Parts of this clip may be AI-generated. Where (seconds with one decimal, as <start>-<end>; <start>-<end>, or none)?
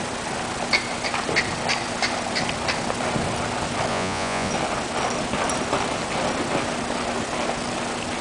3.9-4.5